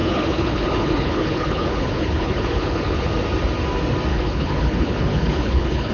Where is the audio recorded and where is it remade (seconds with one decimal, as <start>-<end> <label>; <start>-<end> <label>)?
0.0-3.1 remade; 3.1-4.1 recorded; 4.1-5.9 remade